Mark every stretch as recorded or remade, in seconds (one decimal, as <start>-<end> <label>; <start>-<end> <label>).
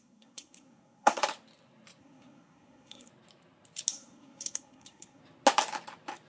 0.0-1.2 remade; 1.2-2.0 recorded; 2.0-3.1 remade; 3.1-3.9 recorded; 3.9-5.2 remade; 5.2-6.3 recorded